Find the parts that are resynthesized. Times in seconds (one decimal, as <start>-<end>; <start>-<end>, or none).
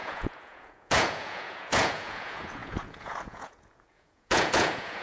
0.0-5.0